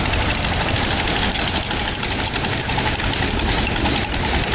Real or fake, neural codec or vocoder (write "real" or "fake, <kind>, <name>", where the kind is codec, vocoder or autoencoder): real